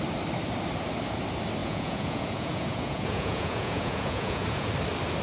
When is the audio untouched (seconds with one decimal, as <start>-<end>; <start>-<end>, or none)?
0.0-1.6; 4.7-5.2